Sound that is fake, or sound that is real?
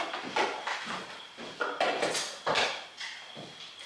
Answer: real